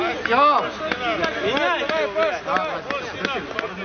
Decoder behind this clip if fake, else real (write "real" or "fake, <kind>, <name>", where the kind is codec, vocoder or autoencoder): real